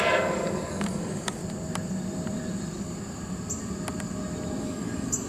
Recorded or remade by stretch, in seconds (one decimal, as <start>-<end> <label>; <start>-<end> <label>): 0.0-1.4 remade; 1.4-4.6 recorded; 4.6-5.3 remade